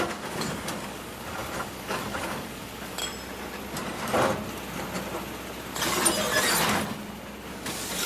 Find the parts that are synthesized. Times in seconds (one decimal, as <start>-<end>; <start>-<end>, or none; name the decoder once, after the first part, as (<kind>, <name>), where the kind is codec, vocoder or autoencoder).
0.0-3.0 (codec, DAC); 7.5-8.1